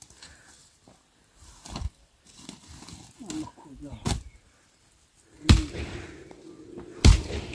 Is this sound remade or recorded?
recorded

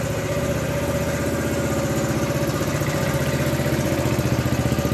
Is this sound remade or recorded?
recorded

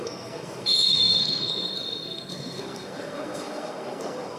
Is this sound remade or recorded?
remade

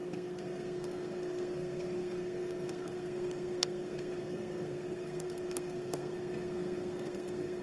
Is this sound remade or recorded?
remade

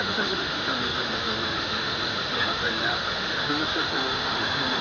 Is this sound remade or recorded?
remade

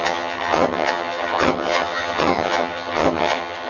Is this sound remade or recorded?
remade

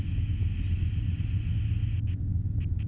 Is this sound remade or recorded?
recorded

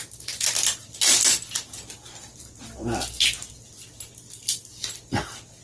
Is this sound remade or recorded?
recorded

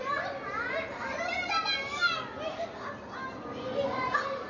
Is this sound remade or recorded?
recorded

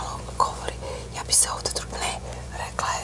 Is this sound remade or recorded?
remade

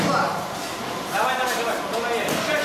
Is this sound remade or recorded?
recorded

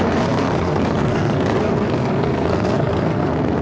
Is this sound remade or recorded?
remade